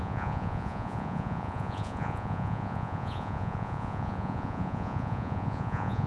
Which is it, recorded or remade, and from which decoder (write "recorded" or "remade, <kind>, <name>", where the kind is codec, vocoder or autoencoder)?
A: remade, vocoder, Vocos